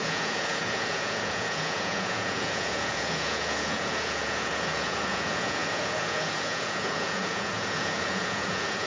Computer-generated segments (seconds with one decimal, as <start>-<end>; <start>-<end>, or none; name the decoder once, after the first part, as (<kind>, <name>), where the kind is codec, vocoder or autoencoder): 0.0-8.9 (vocoder, Vocos)